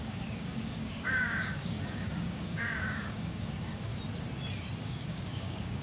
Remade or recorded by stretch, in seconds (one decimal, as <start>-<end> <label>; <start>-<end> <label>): 0.0-3.9 remade; 3.9-4.8 recorded; 4.8-5.8 remade